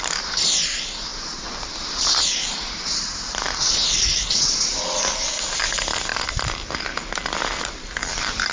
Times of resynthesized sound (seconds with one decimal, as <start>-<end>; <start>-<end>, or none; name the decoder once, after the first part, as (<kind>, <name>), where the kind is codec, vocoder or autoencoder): 1.1-5.6 (vocoder, BigVGAN v2)